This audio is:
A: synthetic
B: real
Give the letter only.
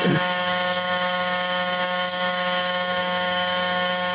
A